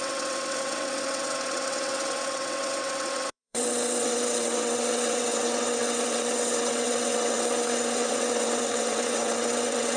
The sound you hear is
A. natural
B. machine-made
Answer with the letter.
B